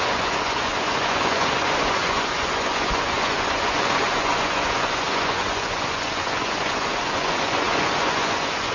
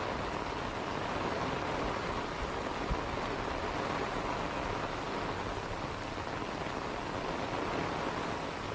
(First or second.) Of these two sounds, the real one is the second